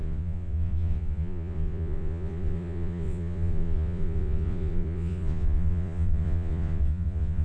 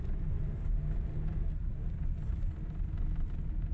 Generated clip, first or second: first